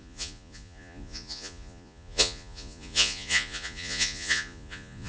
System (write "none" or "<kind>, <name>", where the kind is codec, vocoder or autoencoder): vocoder, Vocos